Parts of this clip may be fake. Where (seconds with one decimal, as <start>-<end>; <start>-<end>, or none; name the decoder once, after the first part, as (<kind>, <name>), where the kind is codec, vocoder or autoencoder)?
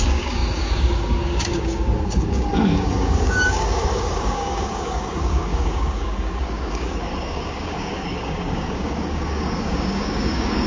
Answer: 0.0-10.7 (codec, DAC)